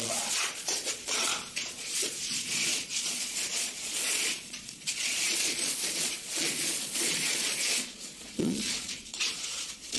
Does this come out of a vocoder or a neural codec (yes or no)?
yes